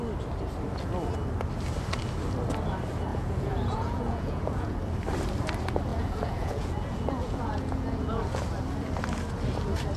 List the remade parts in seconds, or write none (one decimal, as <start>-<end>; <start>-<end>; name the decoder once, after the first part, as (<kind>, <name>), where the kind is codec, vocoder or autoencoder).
3.1-4.8 (vocoder, Vocos); 5.9-8.2